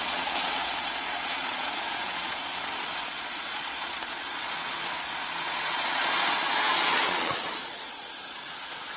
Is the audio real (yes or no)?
no